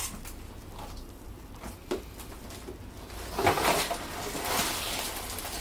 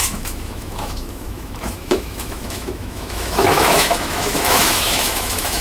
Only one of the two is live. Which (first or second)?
first